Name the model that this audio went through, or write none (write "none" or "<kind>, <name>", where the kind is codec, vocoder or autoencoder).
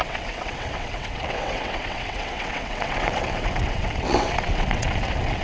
vocoder, WaveNeXt